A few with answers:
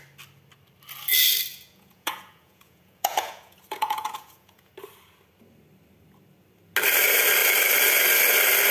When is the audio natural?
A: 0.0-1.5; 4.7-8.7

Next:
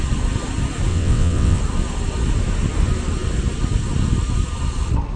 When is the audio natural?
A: 0.0-0.9; 1.6-5.2

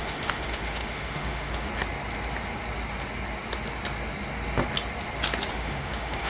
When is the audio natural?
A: 1.7-5.5